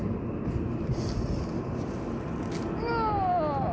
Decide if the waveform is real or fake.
real